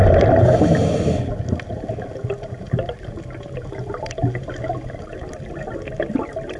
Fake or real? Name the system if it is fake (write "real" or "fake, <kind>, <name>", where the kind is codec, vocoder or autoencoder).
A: real